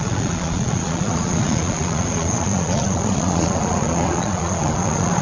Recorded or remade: remade